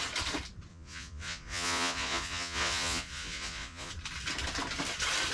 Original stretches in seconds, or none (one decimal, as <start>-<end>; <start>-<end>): 0.0-0.7; 3.9-5.3